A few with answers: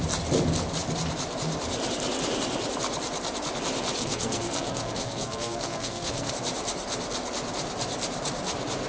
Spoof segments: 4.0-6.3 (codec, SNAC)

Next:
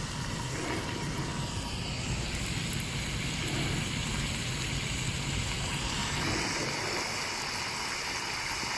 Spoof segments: none

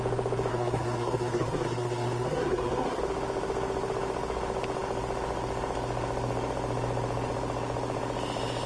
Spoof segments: 0.5-3.0 (codec, SNAC)